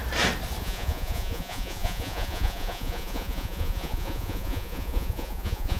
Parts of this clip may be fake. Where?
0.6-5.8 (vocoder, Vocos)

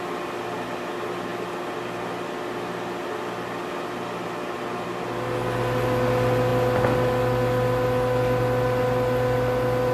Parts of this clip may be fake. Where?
none

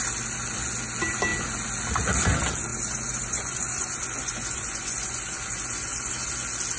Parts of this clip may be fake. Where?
2.7-6.3 (vocoder, Vocos)

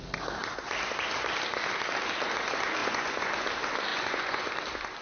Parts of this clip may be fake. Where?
2.8-3.3 (vocoder, Vocos); 3.9-4.5

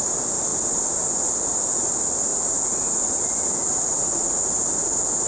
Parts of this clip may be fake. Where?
2.3-3.0 (vocoder, Vocos); 3.7-4.3

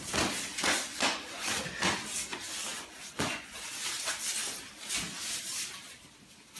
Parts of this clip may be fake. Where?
0.5-1.6 (vocoder, Vocos); 2.7-3.7

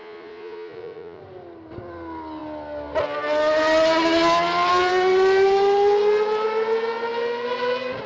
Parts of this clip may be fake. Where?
0.0-1.2 (vocoder, Vocos)

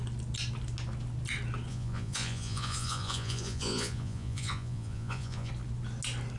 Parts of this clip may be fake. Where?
1.7-5.5 (vocoder, Vocos)